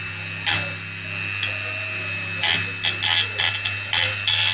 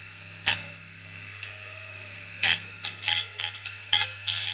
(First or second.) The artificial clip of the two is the second